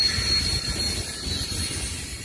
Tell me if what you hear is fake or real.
real